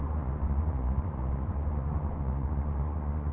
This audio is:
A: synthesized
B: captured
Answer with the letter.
A